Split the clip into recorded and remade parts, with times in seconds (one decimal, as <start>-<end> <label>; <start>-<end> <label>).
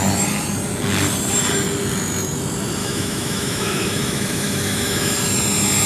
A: 0.0-2.8 recorded; 2.8-5.1 remade; 5.1-5.9 recorded